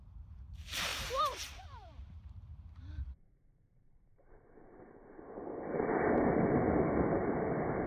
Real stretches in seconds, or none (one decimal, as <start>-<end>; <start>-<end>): 5.4-6.4